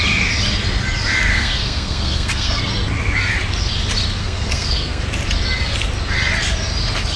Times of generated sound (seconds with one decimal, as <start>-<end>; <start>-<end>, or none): 1.3-2.6; 4.2-5.0